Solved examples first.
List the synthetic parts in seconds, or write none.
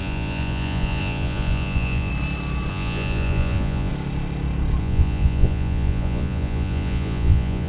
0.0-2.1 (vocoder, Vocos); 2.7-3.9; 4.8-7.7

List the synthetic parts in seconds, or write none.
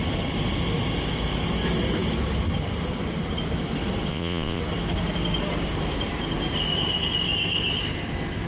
4.1-4.6 (vocoder, Vocos)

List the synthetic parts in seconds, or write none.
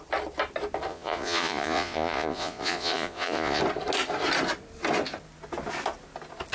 0.9-3.6 (vocoder, Vocos)